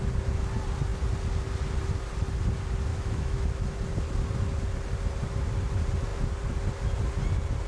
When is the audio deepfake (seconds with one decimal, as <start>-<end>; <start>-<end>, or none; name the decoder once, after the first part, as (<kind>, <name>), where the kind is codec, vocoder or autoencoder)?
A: 2.9-3.4 (autoencoder, DAC-VAE)